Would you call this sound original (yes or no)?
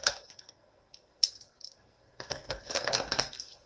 no